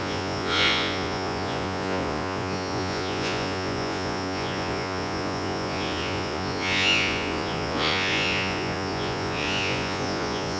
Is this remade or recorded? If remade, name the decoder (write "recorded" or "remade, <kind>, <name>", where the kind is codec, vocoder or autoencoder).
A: remade, vocoder, Vocos